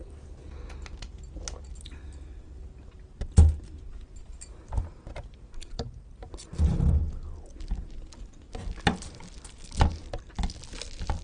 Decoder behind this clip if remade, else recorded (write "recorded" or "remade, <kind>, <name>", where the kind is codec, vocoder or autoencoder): recorded